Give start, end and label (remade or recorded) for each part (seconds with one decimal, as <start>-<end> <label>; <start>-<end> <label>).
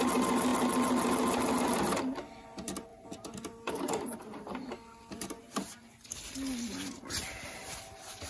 0.0-8.3 recorded